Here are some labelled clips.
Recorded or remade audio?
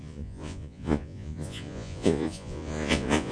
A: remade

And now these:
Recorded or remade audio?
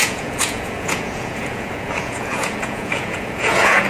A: remade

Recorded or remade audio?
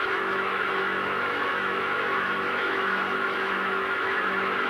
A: remade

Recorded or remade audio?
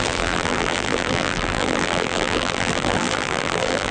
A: remade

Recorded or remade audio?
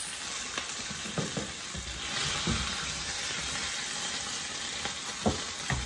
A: recorded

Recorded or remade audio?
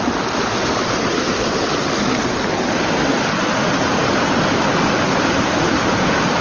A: recorded